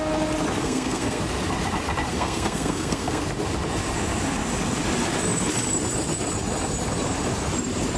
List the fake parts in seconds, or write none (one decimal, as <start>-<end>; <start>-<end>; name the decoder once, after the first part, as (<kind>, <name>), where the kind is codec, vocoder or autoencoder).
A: 0.6-1.2 (codec, SNAC); 2.1-3.2